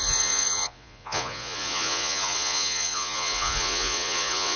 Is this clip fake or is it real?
fake